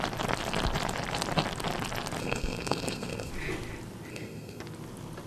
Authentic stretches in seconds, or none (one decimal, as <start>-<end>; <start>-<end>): 0.0-2.2; 3.3-4.1; 4.6-5.3